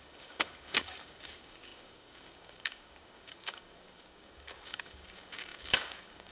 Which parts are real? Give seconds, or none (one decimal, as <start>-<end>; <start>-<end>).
none